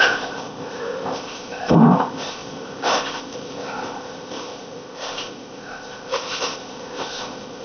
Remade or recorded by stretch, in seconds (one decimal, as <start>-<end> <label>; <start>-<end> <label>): 0.0-7.6 remade